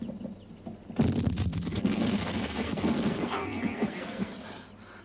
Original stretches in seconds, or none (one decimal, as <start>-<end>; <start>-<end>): 0.0-1.6; 4.3-5.0